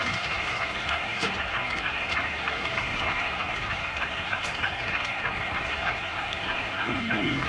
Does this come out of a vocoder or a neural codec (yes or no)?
yes